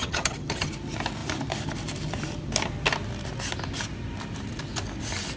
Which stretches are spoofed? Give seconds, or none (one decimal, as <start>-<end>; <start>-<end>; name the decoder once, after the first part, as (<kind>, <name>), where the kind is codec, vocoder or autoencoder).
0.0-0.7 (vocoder, HiFi-GAN)